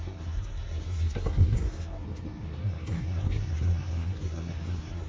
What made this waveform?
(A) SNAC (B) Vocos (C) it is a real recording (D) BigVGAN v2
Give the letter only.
A